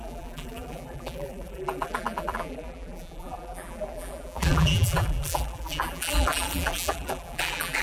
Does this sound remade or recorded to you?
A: remade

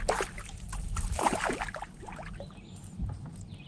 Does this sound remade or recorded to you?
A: recorded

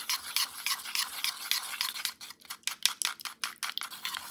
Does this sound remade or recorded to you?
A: recorded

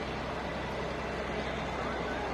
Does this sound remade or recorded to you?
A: recorded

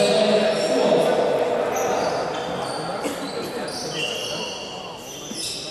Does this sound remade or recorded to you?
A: recorded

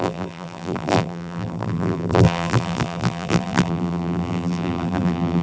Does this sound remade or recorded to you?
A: remade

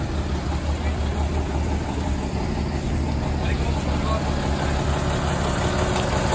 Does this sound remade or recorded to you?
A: recorded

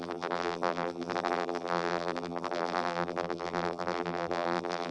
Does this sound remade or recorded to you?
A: remade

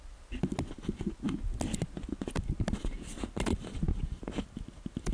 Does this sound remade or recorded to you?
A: recorded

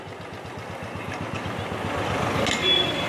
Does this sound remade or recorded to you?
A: recorded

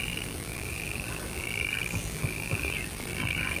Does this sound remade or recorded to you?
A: remade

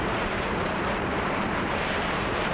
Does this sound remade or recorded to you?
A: remade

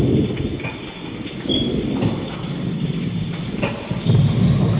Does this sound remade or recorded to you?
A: recorded